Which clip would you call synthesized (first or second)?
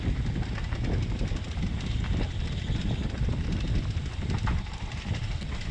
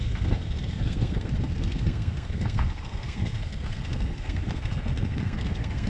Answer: second